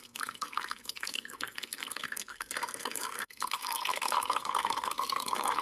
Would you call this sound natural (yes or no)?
no